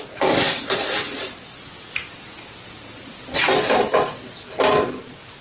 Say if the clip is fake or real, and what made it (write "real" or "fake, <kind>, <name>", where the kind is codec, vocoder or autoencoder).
real